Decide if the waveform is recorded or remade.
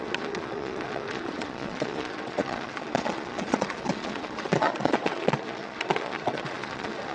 remade